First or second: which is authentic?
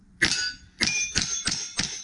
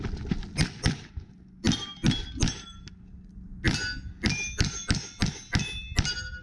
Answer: second